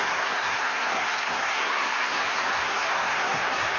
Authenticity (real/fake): fake